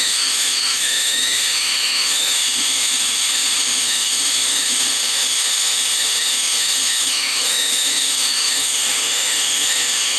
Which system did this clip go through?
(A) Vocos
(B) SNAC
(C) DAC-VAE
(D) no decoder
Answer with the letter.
C